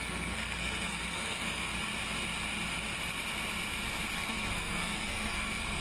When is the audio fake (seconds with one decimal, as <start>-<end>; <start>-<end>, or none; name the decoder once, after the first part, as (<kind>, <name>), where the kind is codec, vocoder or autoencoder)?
0.0-1.7 (codec, SNAC); 4.1-5.8